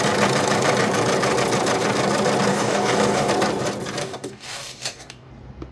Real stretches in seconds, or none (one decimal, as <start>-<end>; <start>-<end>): 0.0-2.5; 3.3-4.0; 5.3-5.7